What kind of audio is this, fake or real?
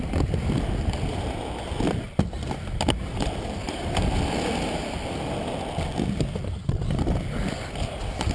real